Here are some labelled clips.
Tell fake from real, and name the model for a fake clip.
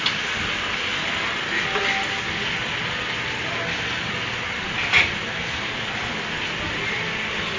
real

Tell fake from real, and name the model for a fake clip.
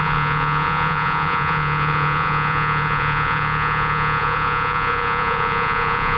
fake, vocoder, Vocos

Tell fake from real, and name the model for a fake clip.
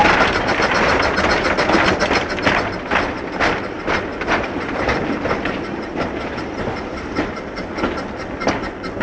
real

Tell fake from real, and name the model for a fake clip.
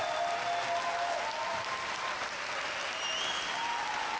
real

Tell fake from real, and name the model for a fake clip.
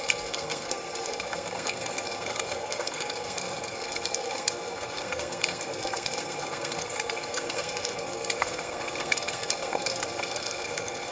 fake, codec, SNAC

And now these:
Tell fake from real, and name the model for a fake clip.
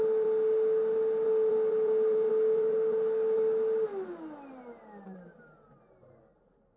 real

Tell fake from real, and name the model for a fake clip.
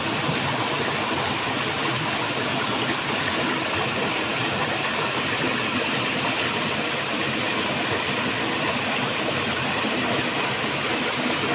real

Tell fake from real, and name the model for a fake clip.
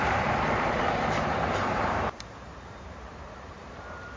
fake, vocoder, BigVGAN v2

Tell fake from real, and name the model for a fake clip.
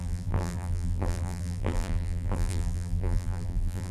fake, vocoder, BigVGAN v2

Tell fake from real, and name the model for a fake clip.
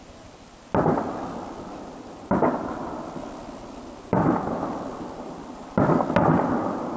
real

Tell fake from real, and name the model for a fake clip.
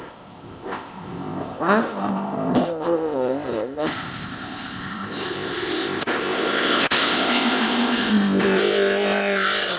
fake, codec, ZipCodec